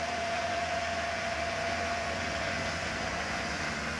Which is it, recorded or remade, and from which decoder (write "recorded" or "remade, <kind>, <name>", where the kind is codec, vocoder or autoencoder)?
remade, vocoder, Vocos